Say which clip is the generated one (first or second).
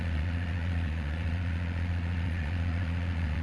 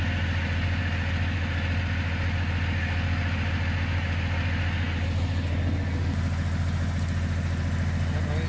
first